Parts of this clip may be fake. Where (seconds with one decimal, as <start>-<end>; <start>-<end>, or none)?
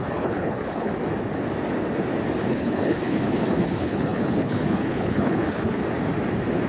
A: 0.0-0.9; 2.5-5.8